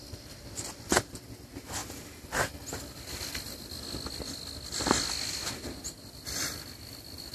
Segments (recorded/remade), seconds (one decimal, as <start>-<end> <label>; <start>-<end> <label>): 0.0-7.3 recorded